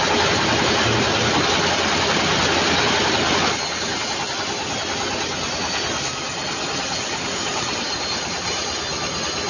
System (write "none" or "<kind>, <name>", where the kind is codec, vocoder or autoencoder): none